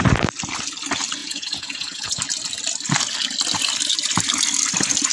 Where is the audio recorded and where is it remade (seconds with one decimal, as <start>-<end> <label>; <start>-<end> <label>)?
0.0-1.2 recorded; 1.2-2.2 remade; 2.2-5.1 recorded

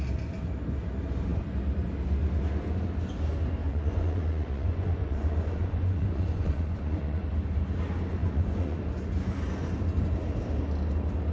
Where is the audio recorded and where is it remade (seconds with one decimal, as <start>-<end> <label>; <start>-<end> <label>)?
0.0-3.6 recorded; 3.6-7.3 remade; 7.3-8.2 recorded; 8.2-8.8 remade; 8.8-11.3 recorded